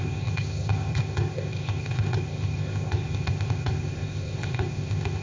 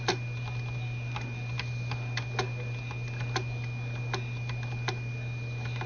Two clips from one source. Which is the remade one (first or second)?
first